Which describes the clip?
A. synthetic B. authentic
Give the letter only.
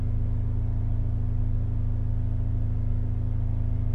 B